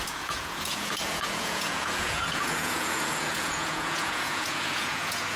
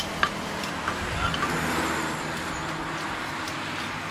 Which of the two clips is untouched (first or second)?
second